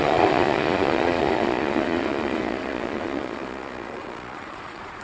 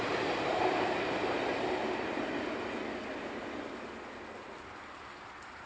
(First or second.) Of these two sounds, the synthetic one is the first